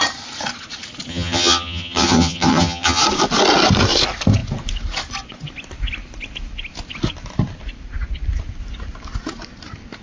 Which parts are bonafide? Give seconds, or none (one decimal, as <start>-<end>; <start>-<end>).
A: 0.0-1.1; 3.0-10.0